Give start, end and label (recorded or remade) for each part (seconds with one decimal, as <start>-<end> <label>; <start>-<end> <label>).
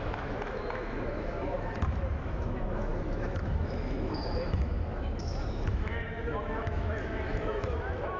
0.0-8.2 remade